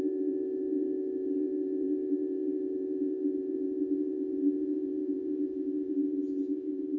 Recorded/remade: remade